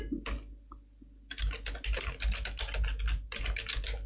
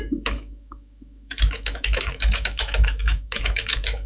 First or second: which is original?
first